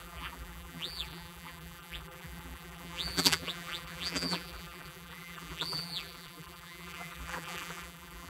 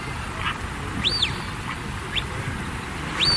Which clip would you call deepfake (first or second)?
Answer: first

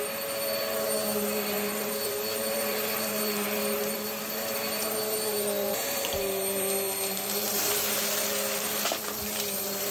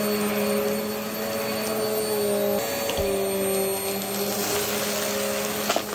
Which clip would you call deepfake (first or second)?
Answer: first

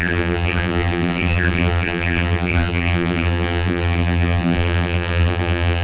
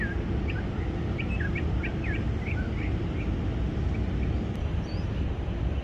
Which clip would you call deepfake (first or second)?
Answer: first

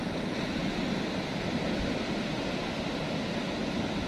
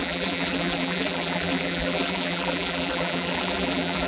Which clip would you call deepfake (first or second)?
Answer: second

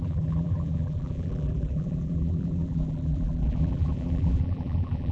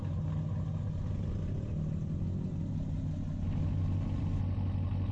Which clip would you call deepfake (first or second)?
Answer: first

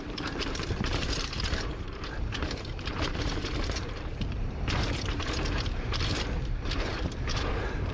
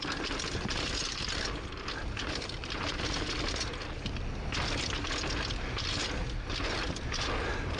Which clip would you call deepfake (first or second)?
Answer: first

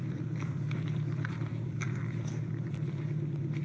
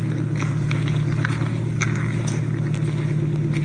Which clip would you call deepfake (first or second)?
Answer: first